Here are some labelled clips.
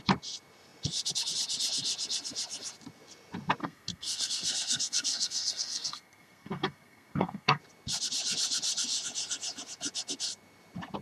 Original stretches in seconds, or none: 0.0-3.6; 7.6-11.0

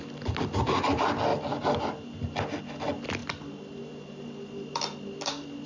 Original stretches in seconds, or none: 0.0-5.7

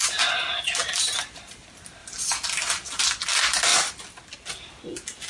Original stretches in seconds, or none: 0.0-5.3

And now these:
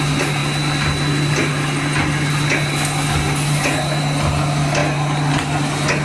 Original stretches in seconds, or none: 0.0-6.0

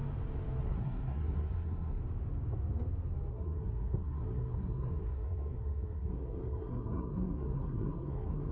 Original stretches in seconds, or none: 0.0-0.6; 2.0-3.3